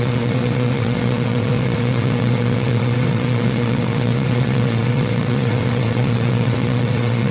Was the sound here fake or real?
fake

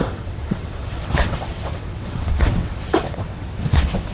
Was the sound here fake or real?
fake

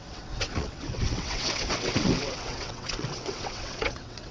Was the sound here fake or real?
fake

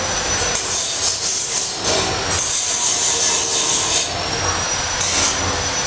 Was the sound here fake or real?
real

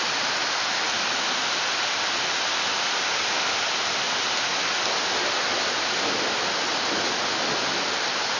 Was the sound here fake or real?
real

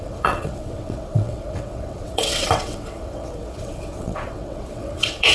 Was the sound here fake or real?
fake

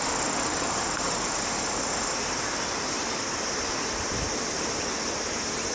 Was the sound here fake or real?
real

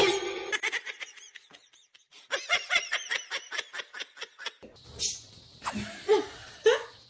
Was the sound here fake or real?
real